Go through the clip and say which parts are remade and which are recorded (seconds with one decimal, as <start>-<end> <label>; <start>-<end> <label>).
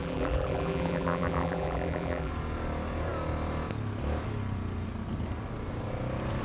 0.0-2.3 remade; 2.3-6.4 recorded